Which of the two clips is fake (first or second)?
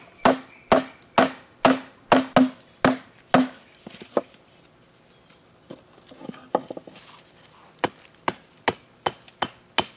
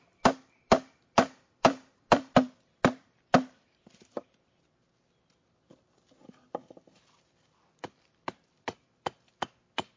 second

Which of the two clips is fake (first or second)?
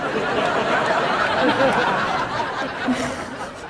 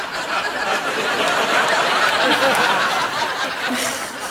second